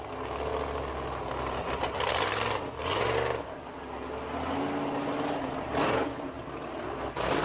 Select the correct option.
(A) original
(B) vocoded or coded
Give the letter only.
A